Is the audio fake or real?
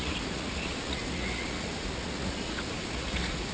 fake